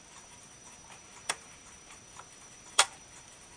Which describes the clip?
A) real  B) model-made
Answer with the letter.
B